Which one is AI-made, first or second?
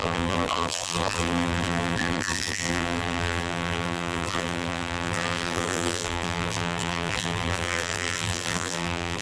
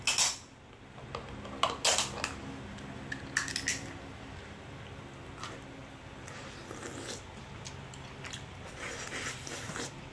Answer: first